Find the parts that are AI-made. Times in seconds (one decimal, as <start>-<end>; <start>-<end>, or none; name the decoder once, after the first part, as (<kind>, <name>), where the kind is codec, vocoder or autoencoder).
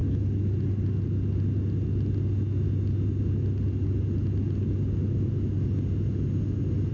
none